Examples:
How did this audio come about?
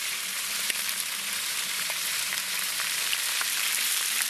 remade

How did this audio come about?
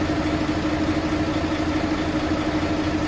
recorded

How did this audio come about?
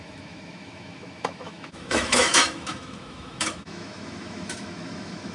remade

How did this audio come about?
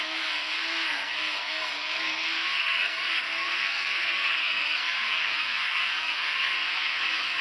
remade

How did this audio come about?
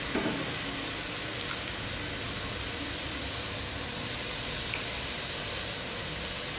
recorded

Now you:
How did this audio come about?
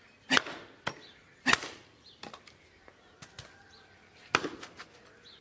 recorded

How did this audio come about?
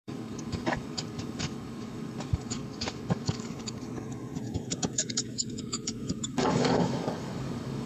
remade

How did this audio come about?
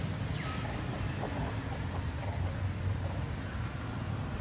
recorded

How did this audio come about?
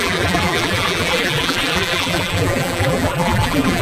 remade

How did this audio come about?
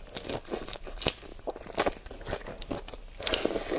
recorded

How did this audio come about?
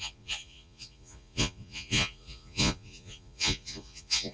remade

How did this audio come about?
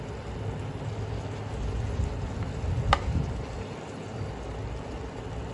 recorded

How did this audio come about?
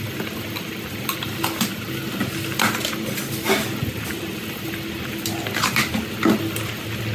recorded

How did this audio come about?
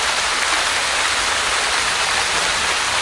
recorded